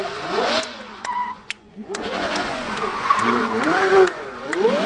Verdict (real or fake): fake